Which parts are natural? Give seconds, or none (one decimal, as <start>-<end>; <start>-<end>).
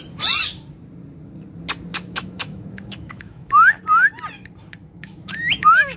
0.0-1.9; 3.5-4.8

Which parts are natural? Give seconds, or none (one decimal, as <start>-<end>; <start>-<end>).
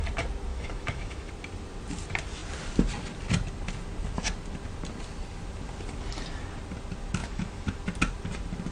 0.0-0.5; 1.3-7.2; 7.8-8.7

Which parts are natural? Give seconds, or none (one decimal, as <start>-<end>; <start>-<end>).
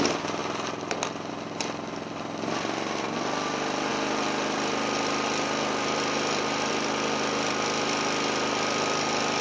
0.0-9.4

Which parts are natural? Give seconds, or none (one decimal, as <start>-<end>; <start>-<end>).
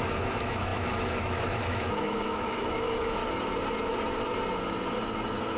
3.2-5.6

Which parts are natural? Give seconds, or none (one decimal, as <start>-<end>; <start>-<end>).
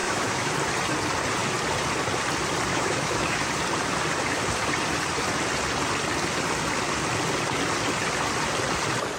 0.5-2.7; 3.5-9.2